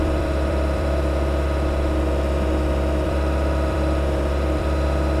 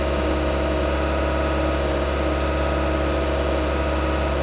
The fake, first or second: first